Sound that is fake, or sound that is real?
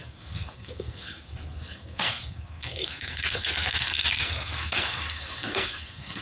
fake